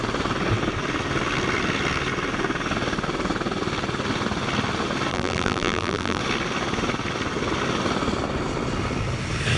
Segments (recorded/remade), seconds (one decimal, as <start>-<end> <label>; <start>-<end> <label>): 0.0-5.1 recorded; 5.1-6.2 remade; 6.2-9.6 recorded